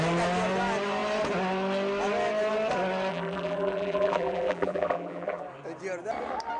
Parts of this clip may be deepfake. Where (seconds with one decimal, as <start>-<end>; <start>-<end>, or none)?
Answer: 3.1-5.4